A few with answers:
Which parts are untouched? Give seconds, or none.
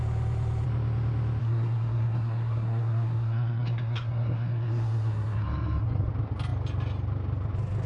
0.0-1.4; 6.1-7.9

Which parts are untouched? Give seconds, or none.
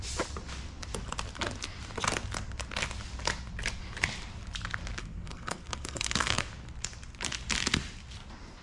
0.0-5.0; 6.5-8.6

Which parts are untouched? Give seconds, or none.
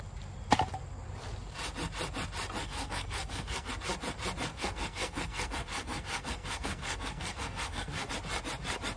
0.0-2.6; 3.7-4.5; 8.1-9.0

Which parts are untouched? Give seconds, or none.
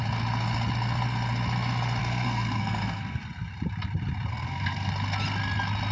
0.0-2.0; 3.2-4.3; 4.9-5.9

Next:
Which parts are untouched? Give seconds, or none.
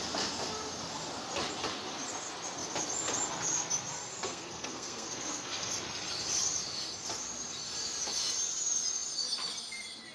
0.0-4.1; 5.7-10.1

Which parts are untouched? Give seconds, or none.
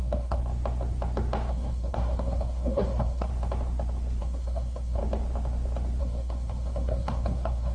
0.4-1.5; 3.3-4.2; 5.0-6.0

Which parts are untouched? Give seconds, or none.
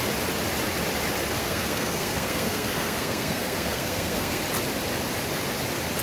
0.0-1.4; 4.4-6.0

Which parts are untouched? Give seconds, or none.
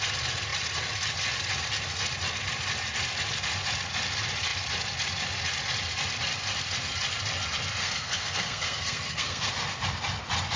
0.0-7.8; 9.5-10.6